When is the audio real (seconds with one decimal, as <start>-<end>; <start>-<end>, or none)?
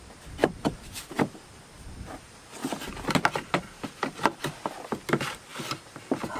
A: 0.0-0.4; 1.6-2.6; 4.4-6.4